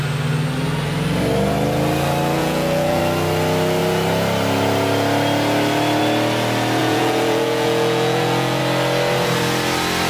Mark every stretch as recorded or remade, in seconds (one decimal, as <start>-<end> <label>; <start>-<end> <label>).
0.0-2.4 recorded; 2.4-3.0 remade; 3.0-6.8 recorded; 6.8-8.6 remade; 8.6-10.1 recorded